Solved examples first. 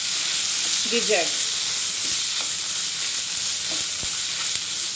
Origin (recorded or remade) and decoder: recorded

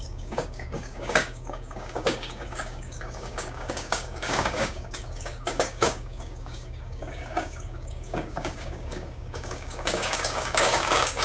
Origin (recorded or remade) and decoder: remade, codec, DAC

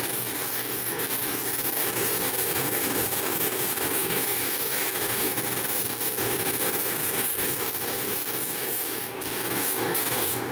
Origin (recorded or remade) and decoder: remade, codec, DAC